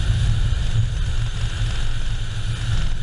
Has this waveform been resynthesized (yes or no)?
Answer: no